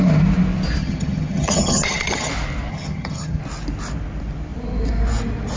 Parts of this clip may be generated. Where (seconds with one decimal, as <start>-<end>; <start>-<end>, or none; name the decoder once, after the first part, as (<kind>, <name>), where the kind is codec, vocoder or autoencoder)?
0.8-2.3 (vocoder, HiFi-GAN); 2.7-3.4